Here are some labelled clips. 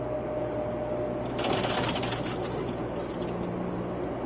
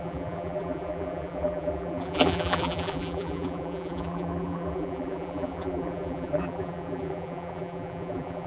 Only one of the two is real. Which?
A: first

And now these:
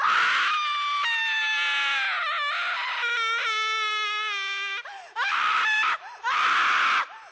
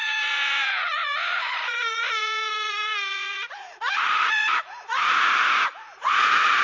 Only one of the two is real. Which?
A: first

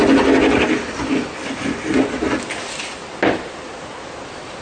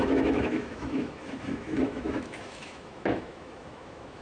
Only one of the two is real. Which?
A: first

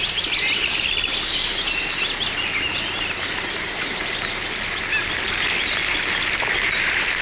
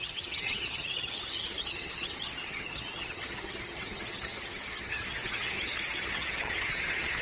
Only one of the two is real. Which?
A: first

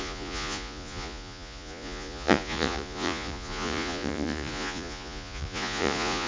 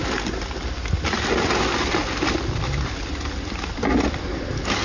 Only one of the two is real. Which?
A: second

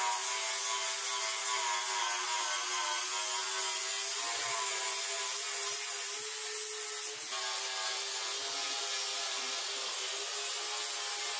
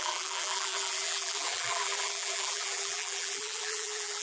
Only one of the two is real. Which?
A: first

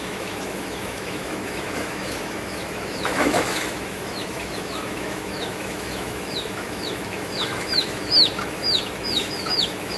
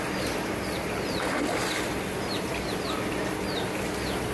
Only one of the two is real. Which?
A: second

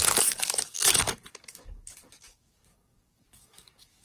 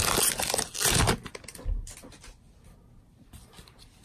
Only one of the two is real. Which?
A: second